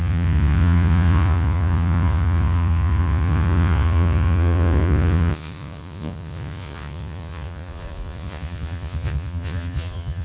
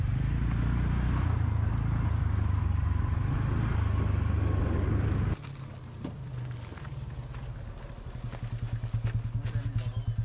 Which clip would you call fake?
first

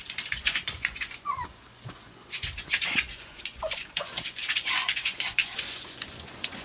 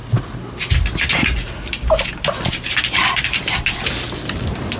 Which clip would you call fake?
first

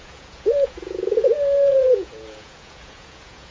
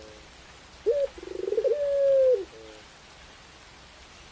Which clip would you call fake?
first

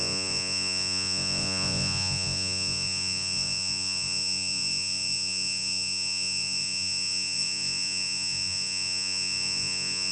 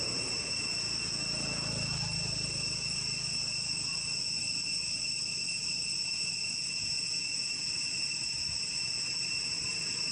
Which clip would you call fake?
first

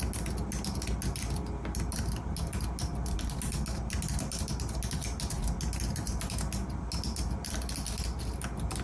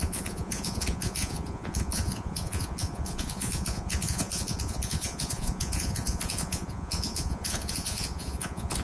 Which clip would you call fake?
second